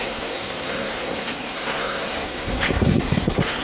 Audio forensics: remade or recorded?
remade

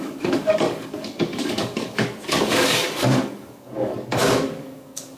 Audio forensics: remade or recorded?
remade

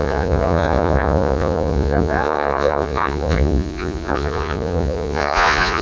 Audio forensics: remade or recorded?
remade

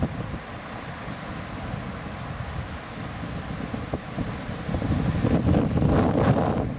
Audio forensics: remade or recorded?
recorded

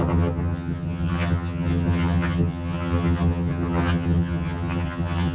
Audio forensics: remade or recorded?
remade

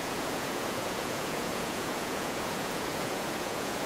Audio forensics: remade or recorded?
remade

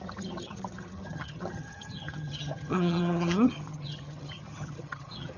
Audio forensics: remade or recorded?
remade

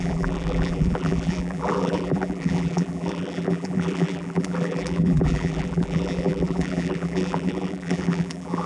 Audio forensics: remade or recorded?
remade